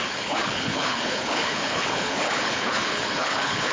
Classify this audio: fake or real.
fake